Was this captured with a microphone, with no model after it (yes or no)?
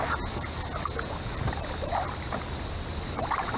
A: yes